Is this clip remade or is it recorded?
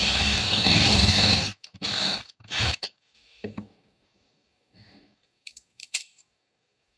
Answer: remade